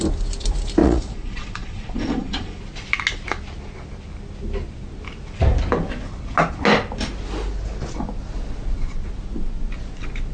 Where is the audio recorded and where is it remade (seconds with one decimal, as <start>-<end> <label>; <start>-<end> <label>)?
0.0-0.8 recorded; 0.8-2.6 remade; 2.6-10.3 recorded